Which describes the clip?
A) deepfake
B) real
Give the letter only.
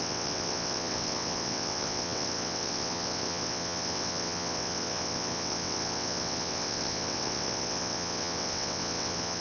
A